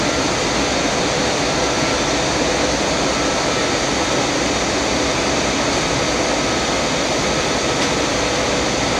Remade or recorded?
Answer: recorded